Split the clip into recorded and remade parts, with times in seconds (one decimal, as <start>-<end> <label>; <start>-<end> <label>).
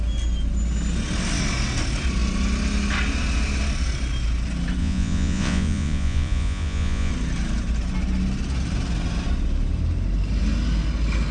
0.0-4.8 recorded; 4.8-7.1 remade; 7.1-11.3 recorded